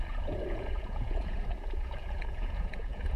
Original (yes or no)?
no